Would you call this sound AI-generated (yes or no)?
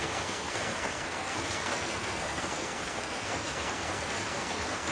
yes